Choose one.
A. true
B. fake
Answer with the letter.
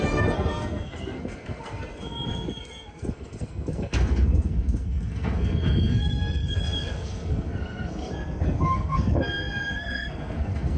B